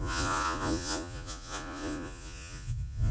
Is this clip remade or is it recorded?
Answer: remade